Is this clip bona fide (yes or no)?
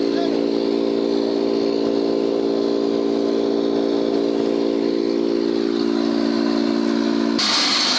yes